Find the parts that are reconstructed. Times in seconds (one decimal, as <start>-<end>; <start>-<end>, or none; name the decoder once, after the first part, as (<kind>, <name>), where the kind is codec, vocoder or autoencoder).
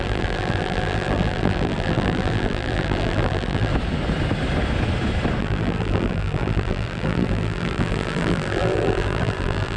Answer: 0.0-3.7 (vocoder, BigVGAN v2); 5.4-9.8